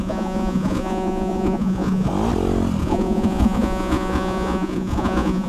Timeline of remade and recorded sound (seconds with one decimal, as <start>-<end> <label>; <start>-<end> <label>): 0.0-2.1 remade; 2.1-2.8 recorded; 2.8-5.5 remade